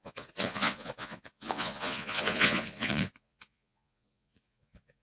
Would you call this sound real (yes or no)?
no